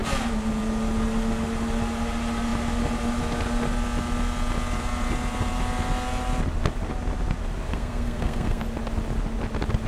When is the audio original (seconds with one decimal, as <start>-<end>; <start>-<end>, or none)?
0.0-7.7; 8.6-9.9